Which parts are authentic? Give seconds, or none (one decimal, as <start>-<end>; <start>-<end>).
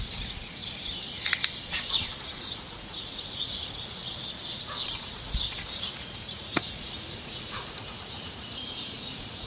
0.6-2.2; 4.0-4.9